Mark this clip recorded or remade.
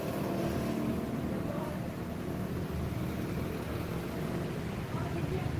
recorded